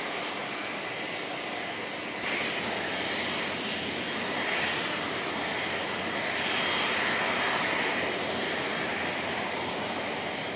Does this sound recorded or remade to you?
recorded